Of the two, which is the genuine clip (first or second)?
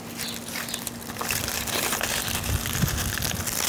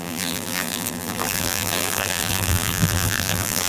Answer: first